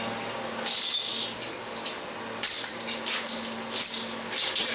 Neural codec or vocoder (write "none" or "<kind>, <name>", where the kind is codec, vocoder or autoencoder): none